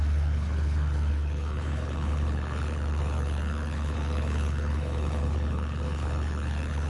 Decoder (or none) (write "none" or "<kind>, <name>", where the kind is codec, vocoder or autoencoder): codec, HILCodec